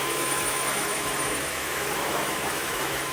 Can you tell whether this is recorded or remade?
remade